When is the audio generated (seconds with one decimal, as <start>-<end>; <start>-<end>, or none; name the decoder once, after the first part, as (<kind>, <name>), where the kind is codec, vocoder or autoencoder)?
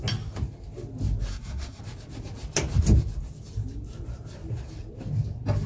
1.3-1.8 (codec, SNAC)